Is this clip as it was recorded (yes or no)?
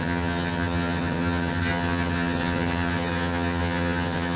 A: no